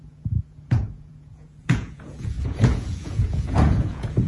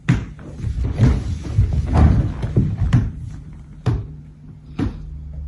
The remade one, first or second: first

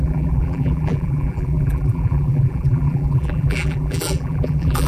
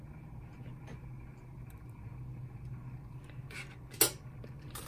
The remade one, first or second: first